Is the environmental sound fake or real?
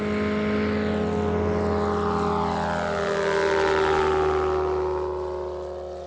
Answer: real